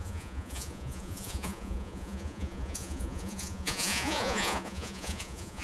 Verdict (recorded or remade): remade